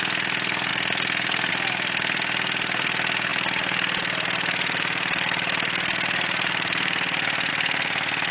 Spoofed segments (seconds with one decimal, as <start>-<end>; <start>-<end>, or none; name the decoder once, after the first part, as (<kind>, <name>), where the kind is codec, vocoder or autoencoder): 3.3-7.5 (vocoder, BigVGAN v2)